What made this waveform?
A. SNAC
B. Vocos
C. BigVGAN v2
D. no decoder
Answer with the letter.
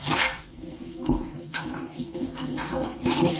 A